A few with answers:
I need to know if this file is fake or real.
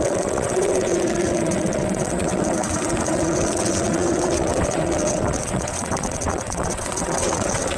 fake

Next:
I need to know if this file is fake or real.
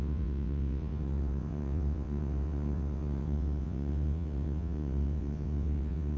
fake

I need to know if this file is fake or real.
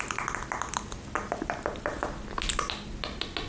real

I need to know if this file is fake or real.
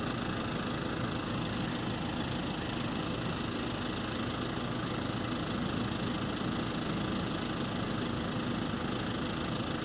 real